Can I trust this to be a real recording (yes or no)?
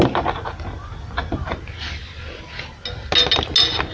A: yes